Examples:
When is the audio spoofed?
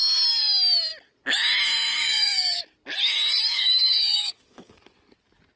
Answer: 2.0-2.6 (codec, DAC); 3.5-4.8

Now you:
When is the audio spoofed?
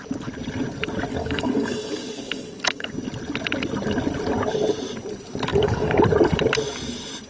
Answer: 1.1-2.9 (codec, DAC); 5.5-6.0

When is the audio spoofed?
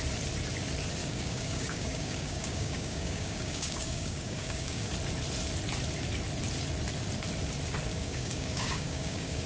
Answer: 1.0-4.9 (codec, DAC); 7.9-9.5